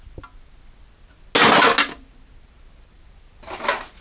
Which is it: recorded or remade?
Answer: recorded